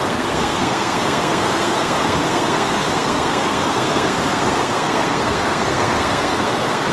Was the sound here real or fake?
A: fake